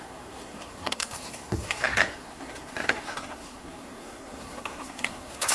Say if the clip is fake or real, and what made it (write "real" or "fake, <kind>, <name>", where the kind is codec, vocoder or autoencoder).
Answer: fake, codec, SNAC